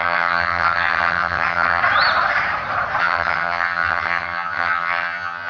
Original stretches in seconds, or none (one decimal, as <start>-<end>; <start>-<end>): 1.8-3.0